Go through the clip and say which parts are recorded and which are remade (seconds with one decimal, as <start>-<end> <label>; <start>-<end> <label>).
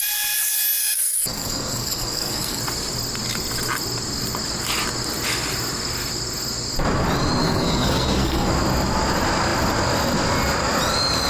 0.0-0.8 recorded; 0.8-2.6 remade; 2.6-7.4 recorded; 7.4-8.5 remade; 8.5-11.3 recorded